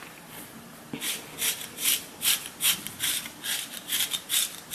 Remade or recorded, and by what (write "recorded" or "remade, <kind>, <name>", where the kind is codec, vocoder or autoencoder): remade, vocoder, BigVGAN v2